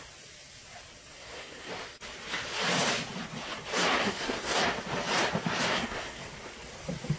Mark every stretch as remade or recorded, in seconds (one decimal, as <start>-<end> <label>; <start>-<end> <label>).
0.0-1.1 recorded; 1.1-1.7 remade; 1.7-4.0 recorded; 4.0-4.6 remade; 4.6-5.7 recorded; 5.7-6.3 remade; 6.3-7.2 recorded